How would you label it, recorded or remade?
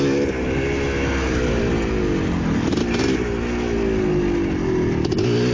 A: recorded